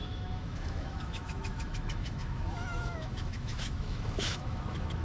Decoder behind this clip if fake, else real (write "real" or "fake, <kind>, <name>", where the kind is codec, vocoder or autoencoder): fake, autoencoder, DAC-VAE